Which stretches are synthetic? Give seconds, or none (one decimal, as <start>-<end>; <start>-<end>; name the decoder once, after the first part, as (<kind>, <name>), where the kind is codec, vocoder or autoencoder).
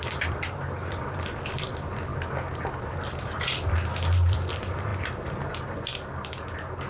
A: 0.0-2.1 (vocoder, BigVGAN v2); 2.8-5.9